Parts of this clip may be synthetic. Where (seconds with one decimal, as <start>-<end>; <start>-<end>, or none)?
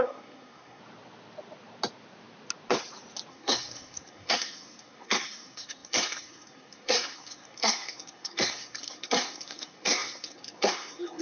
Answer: 0.0-0.8; 3.3-11.2